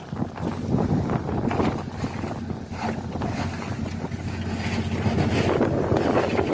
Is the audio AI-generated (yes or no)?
no